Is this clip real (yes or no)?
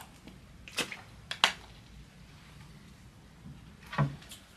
yes